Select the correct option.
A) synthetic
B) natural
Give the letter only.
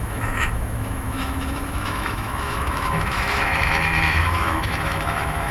A